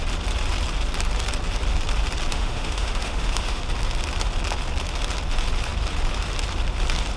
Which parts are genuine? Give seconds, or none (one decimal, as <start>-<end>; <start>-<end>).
0.0-2.3; 3.6-7.2